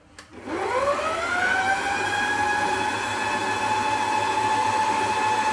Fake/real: real